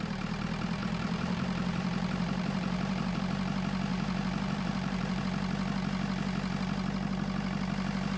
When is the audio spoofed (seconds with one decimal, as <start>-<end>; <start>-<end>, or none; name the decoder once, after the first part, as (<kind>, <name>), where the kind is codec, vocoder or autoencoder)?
0.8-3.2 (vocoder, BigVGAN v2); 3.9-5.2